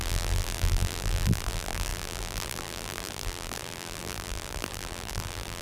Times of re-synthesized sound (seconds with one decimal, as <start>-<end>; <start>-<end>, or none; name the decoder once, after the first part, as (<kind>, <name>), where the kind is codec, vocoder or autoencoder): 0.0-5.6 (vocoder, BigVGAN v2)